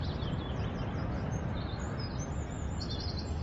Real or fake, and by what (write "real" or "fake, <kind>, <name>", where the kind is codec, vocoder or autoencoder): real